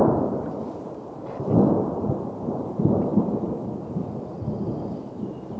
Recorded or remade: remade